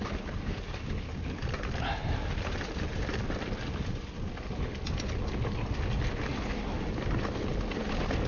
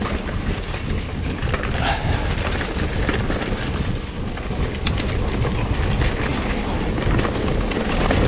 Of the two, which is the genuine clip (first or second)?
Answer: first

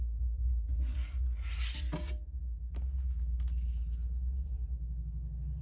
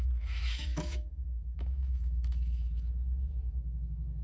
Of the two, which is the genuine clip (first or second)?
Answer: first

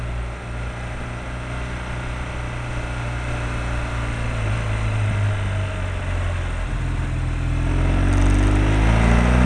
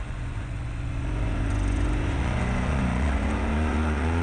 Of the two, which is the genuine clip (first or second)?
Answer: first